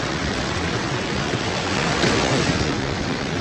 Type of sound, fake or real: fake